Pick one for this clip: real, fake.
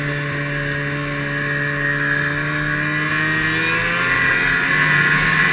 real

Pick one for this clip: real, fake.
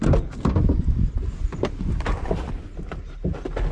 real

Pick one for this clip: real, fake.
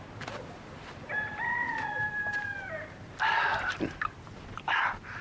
fake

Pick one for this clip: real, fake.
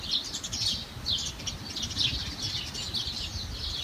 real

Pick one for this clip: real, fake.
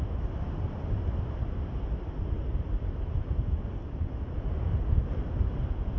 real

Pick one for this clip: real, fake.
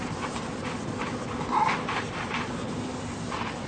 real